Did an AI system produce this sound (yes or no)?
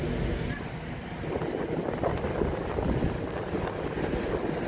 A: no